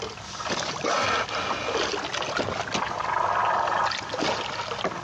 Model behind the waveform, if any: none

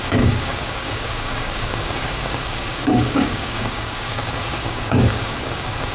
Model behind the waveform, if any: codec, DAC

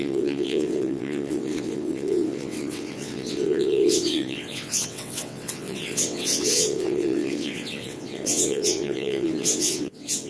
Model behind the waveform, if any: vocoder, WaveNeXt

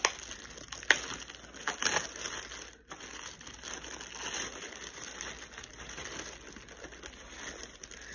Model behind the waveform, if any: none